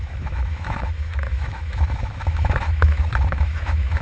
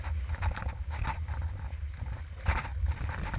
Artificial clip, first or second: first